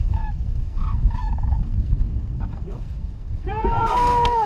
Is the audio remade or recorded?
remade